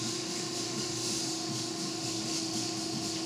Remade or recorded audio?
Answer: remade